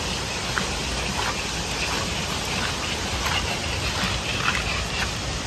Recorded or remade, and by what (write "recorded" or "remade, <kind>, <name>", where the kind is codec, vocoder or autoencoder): recorded